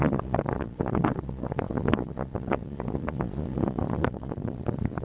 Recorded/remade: remade